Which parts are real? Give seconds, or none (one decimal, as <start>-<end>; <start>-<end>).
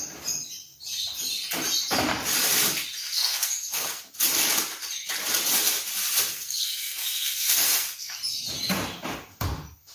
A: 0.0-3.0; 4.0-6.3; 8.2-9.9